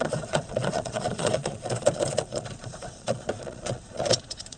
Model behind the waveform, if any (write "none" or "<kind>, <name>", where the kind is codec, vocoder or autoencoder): vocoder, Vocos